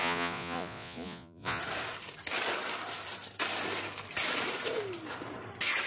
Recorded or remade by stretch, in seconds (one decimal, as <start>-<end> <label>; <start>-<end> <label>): 0.0-1.6 remade; 1.6-5.9 recorded